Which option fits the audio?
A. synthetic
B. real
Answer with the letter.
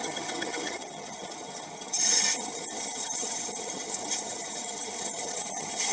A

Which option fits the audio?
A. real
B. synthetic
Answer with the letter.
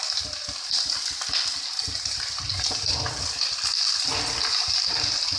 A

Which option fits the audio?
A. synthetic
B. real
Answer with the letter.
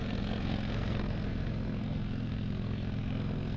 A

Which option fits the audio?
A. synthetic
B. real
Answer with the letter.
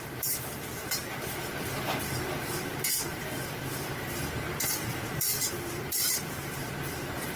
A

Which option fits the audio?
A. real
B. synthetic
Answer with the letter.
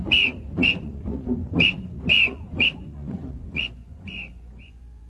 B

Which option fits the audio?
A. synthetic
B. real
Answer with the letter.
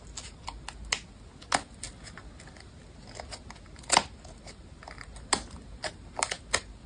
B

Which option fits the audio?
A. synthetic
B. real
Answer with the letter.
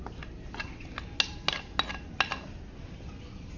B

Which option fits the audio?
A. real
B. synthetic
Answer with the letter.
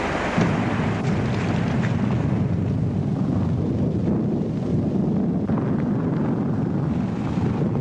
A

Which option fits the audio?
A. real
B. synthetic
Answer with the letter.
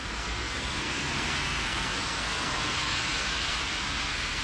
B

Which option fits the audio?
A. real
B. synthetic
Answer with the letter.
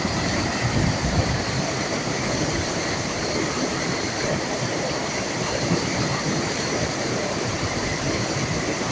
B